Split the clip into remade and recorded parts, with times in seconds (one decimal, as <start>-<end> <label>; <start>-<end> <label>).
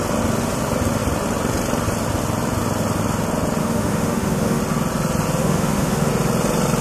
0.0-3.6 recorded; 3.6-4.6 remade; 4.6-5.4 recorded; 5.4-6.1 remade; 6.1-6.8 recorded